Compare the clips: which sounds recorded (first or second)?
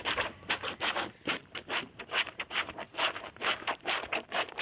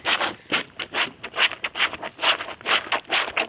second